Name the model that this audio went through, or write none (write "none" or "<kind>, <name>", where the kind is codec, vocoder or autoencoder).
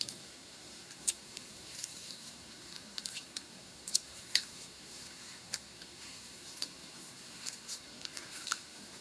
codec, SNAC